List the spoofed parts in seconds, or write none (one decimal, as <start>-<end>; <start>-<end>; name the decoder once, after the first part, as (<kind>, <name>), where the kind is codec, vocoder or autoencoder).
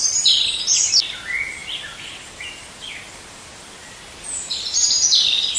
none